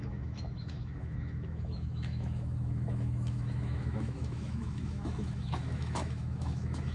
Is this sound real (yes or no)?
no